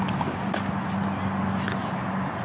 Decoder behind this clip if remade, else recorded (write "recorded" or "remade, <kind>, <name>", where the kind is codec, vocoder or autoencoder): recorded